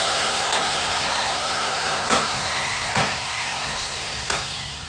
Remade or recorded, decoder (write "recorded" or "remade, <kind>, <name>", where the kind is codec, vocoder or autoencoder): remade, codec, SNAC